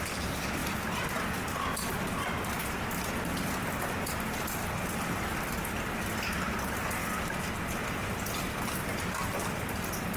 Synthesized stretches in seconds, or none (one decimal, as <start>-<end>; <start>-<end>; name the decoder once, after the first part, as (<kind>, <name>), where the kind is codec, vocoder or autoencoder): none